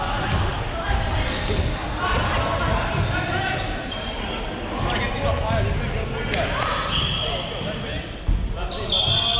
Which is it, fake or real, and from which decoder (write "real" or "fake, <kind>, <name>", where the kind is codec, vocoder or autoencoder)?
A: real